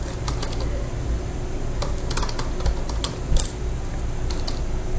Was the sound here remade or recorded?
recorded